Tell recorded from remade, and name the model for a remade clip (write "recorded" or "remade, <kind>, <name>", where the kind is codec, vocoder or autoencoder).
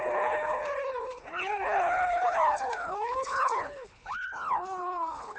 remade, codec, HILCodec